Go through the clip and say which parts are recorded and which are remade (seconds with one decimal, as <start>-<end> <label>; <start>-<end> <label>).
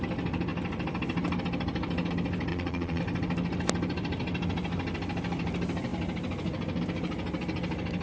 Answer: 0.0-2.5 recorded; 2.5-3.0 remade; 3.0-8.0 recorded